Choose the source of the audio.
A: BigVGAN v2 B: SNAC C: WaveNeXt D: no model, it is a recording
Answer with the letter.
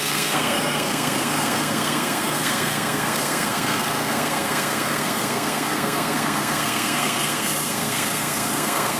B